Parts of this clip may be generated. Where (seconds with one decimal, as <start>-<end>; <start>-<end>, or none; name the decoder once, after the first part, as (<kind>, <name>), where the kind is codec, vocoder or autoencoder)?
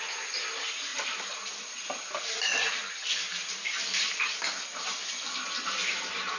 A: 0.9-1.8 (vocoder, BigVGAN v2); 3.0-3.7